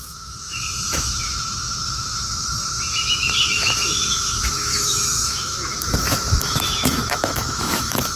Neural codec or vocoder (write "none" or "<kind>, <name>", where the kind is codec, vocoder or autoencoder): autoencoder, DAC-VAE